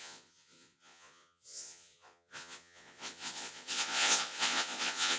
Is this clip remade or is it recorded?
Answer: remade